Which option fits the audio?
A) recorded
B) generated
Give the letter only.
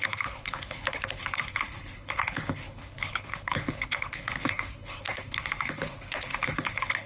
B